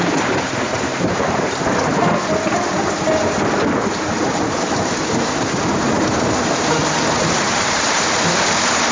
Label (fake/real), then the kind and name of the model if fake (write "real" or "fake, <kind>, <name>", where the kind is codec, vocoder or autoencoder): fake, vocoder, BigVGAN v2